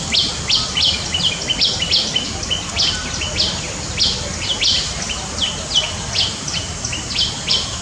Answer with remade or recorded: recorded